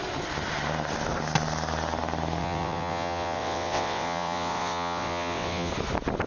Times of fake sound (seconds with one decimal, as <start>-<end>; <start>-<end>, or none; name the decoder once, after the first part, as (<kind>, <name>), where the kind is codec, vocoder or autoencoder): 2.4-5.7 (vocoder, WaveNeXt)